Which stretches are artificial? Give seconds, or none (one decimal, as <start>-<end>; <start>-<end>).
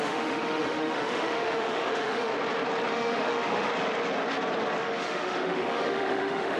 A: 0.0-2.3; 2.9-3.7; 4.8-6.6